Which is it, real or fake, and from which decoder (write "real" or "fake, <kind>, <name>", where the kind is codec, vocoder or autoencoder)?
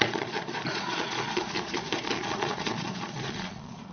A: fake, vocoder, Vocos